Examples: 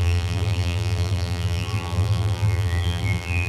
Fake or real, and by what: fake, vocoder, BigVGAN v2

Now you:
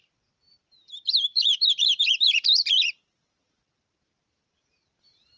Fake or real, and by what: fake, vocoder, BigVGAN v2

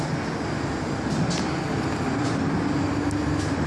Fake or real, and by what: real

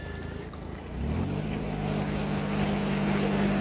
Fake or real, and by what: real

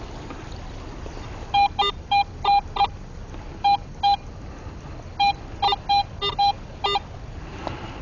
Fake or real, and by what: real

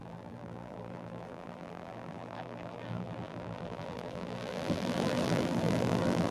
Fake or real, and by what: fake, vocoder, BigVGAN v2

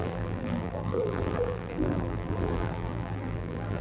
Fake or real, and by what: fake, vocoder, BigVGAN v2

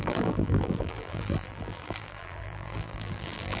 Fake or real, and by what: fake, vocoder, BigVGAN v2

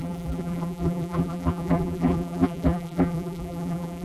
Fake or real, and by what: fake, vocoder, BigVGAN v2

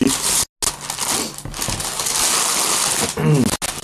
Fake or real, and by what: real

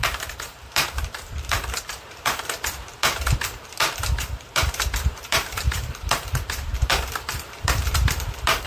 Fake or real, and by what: fake, vocoder, BigVGAN v2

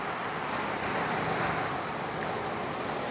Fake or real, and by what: real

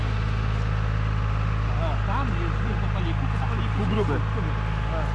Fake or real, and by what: real